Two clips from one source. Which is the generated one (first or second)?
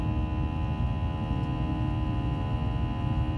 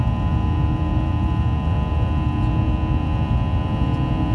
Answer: second